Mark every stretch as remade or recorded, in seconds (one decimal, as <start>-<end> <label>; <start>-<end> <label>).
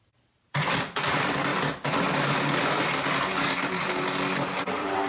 0.0-1.5 remade; 1.5-4.6 recorded; 4.6-5.1 remade